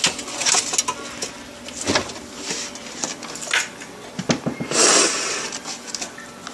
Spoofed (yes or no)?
no